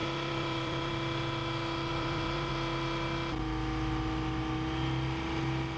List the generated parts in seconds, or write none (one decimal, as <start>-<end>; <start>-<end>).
0.0-0.9; 1.9-2.5